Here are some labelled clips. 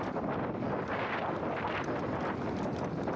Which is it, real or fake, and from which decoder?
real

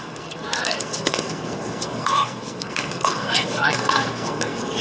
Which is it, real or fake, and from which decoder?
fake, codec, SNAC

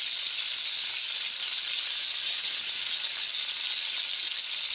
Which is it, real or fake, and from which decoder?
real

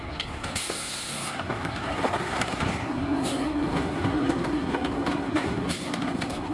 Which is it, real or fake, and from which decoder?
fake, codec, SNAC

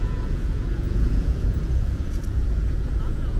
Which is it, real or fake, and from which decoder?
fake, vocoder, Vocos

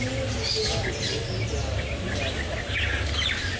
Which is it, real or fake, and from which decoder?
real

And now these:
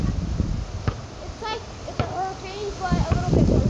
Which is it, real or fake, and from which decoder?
real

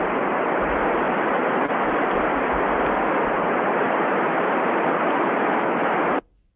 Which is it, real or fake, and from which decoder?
real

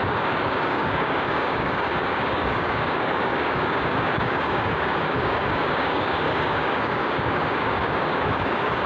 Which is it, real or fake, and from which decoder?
fake, codec, DAC